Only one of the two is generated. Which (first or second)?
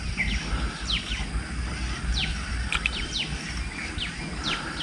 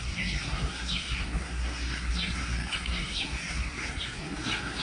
second